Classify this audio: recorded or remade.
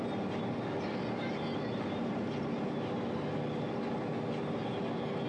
recorded